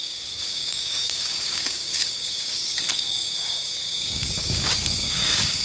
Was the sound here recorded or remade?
remade